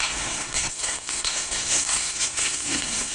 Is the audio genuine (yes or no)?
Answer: no